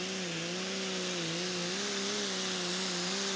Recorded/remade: recorded